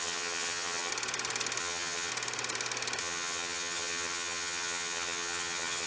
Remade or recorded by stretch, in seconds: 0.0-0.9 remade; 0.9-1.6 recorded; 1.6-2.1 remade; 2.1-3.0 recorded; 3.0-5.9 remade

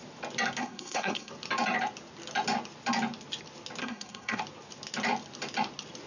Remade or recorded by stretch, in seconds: 0.0-0.6 recorded; 0.6-1.3 remade; 1.3-3.8 recorded; 3.8-4.4 remade; 4.4-6.1 recorded